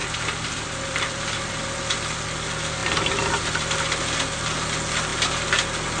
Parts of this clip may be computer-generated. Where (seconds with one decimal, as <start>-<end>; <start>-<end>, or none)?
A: 0.0-1.6